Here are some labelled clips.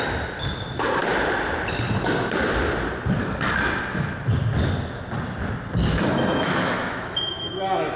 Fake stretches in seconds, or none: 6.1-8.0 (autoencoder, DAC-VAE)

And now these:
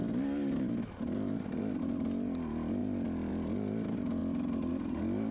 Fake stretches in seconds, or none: none

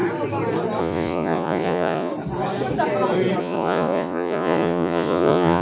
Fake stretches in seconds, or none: 0.8-2.1 (vocoder, Vocos); 3.4-5.6